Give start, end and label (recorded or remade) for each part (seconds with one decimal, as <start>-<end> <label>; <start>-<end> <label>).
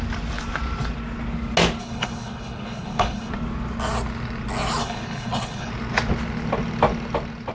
0.0-1.8 recorded; 1.8-3.3 remade; 3.3-4.8 recorded; 4.8-5.7 remade; 5.7-7.5 recorded